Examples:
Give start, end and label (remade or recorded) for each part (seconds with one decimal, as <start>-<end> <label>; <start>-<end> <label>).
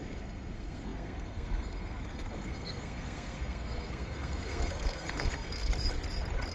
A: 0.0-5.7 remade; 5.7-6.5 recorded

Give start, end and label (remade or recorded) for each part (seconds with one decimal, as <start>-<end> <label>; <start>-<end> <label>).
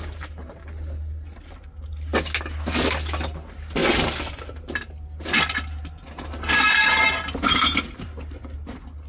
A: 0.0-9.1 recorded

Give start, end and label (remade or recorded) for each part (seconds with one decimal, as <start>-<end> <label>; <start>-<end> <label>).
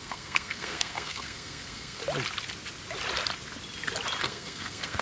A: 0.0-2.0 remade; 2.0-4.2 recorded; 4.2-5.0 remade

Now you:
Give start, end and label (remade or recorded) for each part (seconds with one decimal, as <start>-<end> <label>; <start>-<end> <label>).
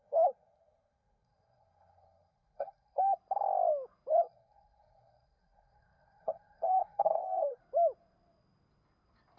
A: 0.0-3.0 remade; 3.0-4.1 recorded; 4.1-7.6 remade; 7.6-9.4 recorded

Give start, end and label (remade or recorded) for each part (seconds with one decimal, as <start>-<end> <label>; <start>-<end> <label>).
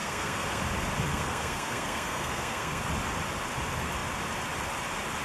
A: 0.0-0.6 remade; 0.6-1.1 recorded; 1.1-2.8 remade; 2.8-5.2 recorded